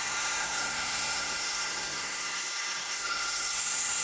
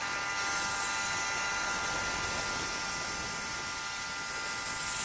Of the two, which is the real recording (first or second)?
second